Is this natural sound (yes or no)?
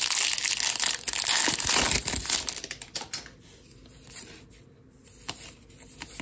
yes